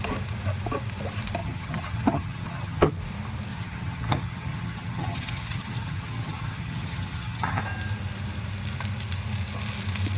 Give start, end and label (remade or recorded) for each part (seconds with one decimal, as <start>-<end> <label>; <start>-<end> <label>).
0.0-1.4 recorded; 1.4-2.9 remade; 2.9-3.5 recorded; 3.5-7.6 remade; 7.6-10.2 recorded